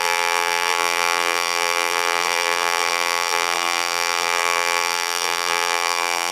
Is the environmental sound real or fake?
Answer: fake